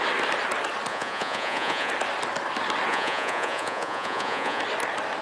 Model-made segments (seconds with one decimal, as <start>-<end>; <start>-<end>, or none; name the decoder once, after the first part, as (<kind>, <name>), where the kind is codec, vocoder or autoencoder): 0.9-1.9 (vocoder, Vocos); 2.9-4.6